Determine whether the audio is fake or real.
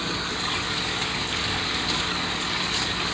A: fake